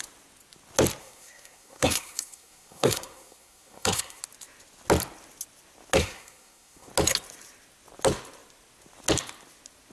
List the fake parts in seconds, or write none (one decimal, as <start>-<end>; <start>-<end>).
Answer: 1.0-4.2; 6.0-6.9